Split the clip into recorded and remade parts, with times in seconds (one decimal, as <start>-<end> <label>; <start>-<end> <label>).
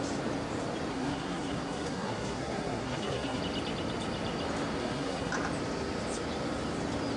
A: 0.0-0.9 recorded; 0.9-3.4 remade; 3.4-4.8 recorded; 4.8-5.3 remade; 5.3-7.2 recorded